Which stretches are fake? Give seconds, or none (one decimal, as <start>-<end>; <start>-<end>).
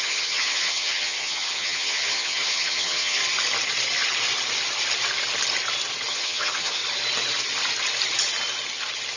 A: 0.0-3.2; 6.1-6.8